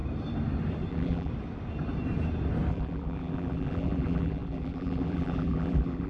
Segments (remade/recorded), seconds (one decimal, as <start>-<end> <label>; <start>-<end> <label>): 0.0-0.9 recorded; 0.9-1.3 remade; 1.3-2.7 recorded; 2.7-6.1 remade